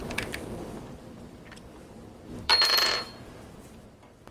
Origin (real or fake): fake